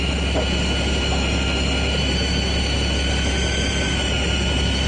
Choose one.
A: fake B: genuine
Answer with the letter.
B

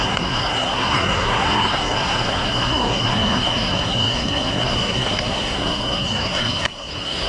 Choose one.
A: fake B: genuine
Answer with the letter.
A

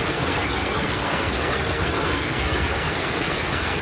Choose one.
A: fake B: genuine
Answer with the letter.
A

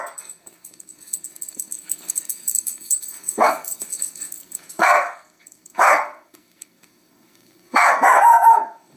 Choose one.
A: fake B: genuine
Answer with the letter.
A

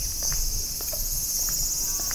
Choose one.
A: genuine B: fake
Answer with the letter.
A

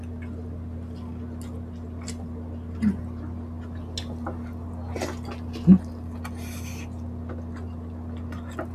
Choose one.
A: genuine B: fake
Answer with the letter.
A